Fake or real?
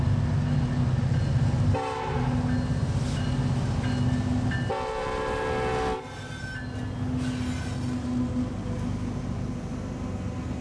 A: real